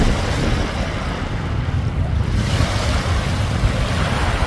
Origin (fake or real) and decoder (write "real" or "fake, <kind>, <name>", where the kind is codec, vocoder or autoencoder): real